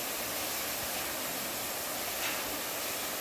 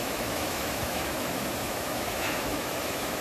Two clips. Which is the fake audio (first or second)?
second